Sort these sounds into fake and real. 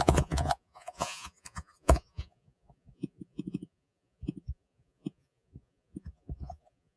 fake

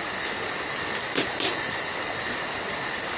real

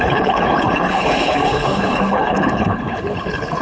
fake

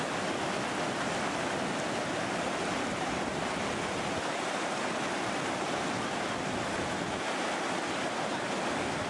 real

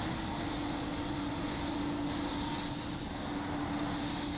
real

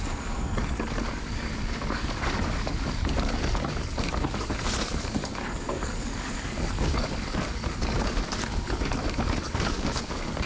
fake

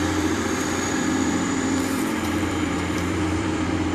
fake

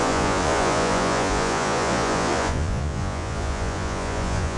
fake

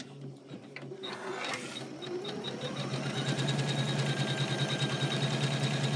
real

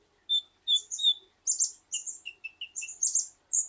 real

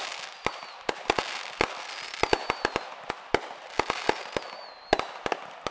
real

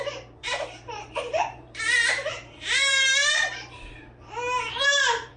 fake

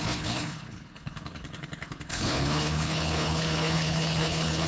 fake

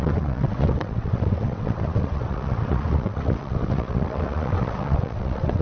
fake